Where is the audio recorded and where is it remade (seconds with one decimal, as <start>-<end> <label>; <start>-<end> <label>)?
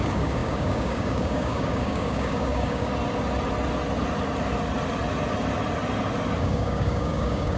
0.0-2.9 remade; 2.9-6.4 recorded; 6.4-7.6 remade